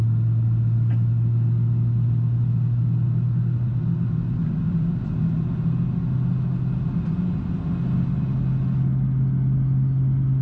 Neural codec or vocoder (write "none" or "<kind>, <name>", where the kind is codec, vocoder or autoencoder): none